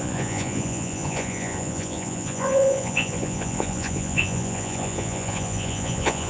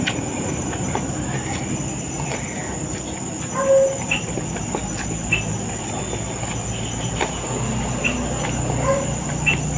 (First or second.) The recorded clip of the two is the second